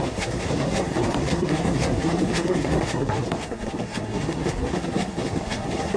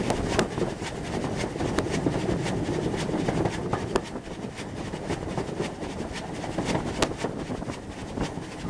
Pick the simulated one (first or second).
first